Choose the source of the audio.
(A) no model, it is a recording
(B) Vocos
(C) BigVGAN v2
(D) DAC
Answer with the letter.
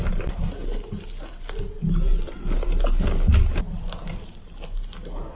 A